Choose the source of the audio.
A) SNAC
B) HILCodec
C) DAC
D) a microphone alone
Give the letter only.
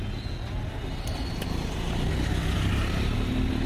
D